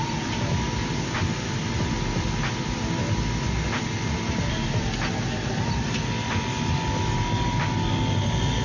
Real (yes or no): yes